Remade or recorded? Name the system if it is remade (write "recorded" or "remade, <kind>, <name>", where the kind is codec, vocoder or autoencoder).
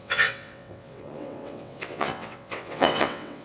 remade, vocoder, WaveNeXt